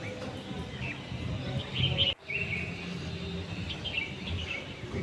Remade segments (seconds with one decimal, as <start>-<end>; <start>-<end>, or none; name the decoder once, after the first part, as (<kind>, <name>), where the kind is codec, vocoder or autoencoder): none